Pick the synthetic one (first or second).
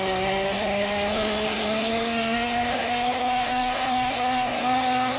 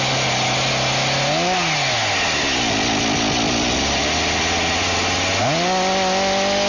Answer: first